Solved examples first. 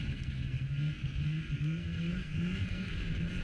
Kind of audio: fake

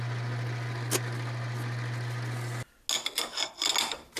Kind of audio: real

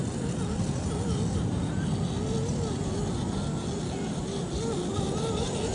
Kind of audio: real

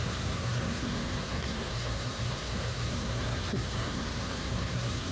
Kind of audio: fake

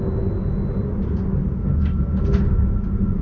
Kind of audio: real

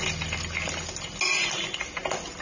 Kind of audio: real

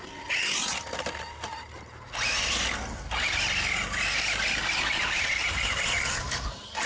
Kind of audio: real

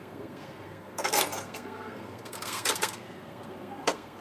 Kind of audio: fake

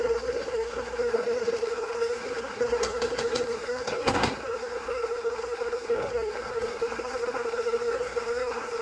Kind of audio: fake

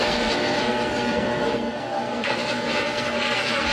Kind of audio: fake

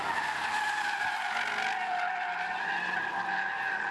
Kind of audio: real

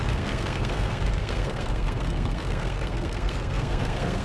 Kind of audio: fake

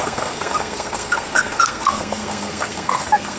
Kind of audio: fake